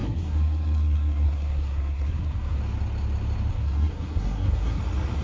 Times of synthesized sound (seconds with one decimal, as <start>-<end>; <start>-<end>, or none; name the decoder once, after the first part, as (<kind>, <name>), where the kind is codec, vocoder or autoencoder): 0.0-2.6 (codec, SNAC); 3.5-4.8